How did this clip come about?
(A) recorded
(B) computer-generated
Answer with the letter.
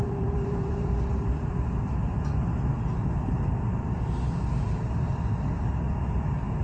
B